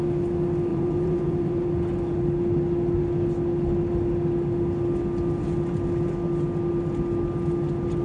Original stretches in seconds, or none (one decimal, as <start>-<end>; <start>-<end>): 0.0-0.7; 1.7-8.0